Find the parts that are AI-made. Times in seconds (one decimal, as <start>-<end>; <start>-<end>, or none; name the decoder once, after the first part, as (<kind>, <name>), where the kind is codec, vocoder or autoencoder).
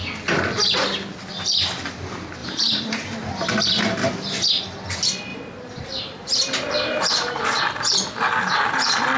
2.4-3.5 (vocoder, BigVGAN v2); 4.0-4.5; 5.3-7.4